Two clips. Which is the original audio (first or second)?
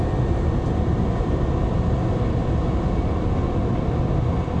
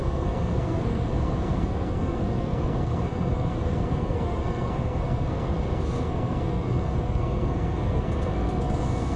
first